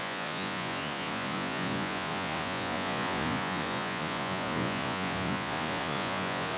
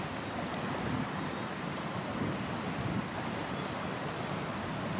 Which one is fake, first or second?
first